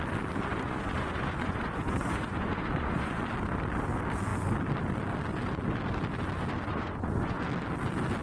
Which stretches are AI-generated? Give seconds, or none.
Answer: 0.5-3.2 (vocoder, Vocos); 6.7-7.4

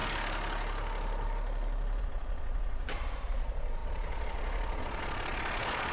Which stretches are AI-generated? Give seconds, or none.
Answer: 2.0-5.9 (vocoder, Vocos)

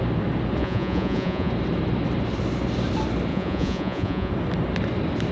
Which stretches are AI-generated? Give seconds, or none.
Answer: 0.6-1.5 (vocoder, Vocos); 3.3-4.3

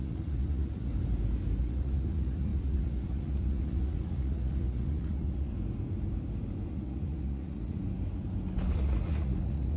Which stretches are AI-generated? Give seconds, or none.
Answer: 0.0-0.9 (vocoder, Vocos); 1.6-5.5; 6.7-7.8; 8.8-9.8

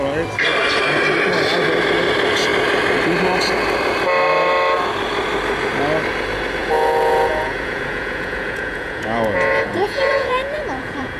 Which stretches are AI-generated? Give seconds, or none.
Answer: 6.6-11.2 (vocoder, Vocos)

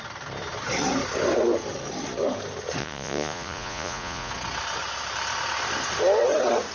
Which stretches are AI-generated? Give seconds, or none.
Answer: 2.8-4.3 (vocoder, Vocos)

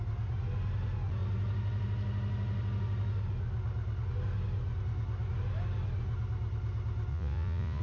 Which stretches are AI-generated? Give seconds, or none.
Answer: 7.1-7.8 (vocoder, Vocos)